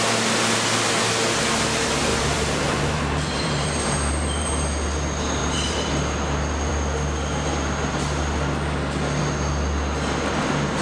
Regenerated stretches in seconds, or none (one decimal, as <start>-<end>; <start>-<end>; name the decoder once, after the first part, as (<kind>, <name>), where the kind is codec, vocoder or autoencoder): 2.1-4.5 (vocoder, BigVGAN v2); 5.4-5.9